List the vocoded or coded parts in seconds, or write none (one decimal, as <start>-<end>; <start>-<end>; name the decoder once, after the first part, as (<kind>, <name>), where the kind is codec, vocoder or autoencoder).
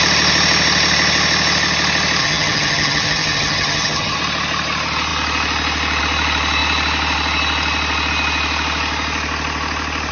2.2-4.2 (vocoder, HiFi-GAN)